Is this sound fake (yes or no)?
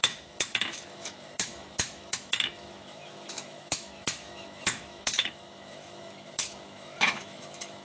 yes